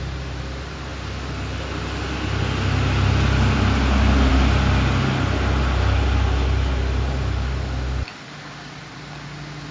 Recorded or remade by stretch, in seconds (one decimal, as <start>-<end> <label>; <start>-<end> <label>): 0.0-9.7 recorded